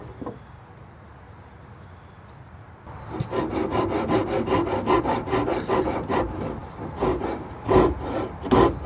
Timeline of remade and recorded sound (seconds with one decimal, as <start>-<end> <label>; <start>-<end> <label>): 0.0-8.9 recorded